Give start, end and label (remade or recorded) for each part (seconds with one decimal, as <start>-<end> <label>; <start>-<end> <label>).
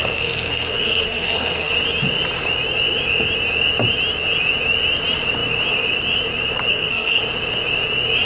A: 0.0-1.7 remade; 1.7-6.7 recorded; 6.7-7.2 remade; 7.2-8.3 recorded